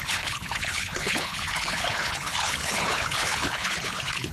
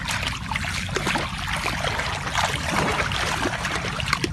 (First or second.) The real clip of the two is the second